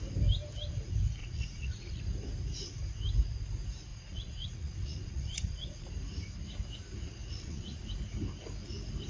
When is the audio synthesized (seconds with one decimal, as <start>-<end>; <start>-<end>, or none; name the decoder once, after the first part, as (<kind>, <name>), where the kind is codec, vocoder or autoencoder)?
1.2-2.0 (vocoder, Vocos); 3.9-5.9; 7.2-7.9